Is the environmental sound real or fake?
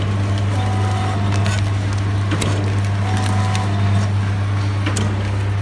real